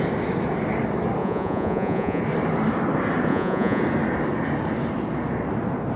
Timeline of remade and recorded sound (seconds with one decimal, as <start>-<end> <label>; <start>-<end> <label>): 0.0-1.2 recorded; 1.2-2.2 remade; 2.2-3.3 recorded; 3.3-3.8 remade; 3.8-6.0 recorded